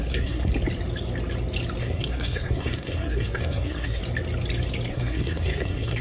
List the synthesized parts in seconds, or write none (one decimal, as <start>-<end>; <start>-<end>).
0.0-0.5; 1.8-4.0; 4.9-6.0